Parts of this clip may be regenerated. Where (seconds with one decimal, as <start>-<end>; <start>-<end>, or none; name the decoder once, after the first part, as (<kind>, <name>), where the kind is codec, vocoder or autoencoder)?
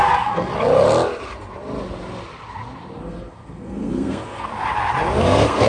0.0-0.5 (codec, SNAC); 3.0-4.5; 5.2-5.7